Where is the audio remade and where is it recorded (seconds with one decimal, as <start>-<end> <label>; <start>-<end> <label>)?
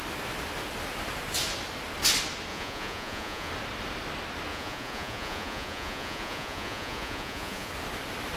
0.0-2.5 recorded; 2.5-3.5 remade; 3.5-4.5 recorded; 4.5-7.7 remade; 7.7-8.4 recorded